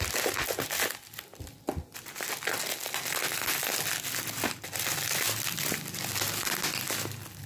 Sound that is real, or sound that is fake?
real